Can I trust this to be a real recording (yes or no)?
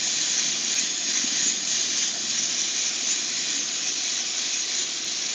yes